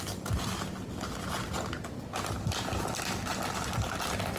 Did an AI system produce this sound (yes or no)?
no